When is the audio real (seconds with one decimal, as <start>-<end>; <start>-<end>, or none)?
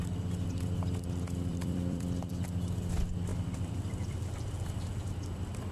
0.0-1.5; 2.3-3.3; 5.1-5.7